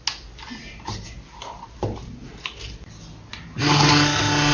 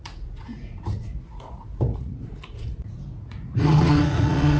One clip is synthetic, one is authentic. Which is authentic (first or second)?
first